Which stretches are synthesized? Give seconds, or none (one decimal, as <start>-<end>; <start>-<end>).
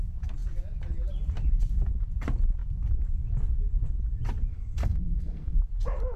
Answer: 4.5-5.6